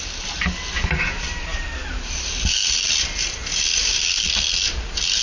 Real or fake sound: real